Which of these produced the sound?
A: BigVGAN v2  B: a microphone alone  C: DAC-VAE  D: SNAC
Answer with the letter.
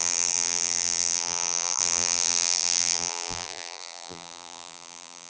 A